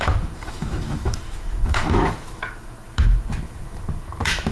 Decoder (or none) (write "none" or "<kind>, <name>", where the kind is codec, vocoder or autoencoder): autoencoder, DAC-VAE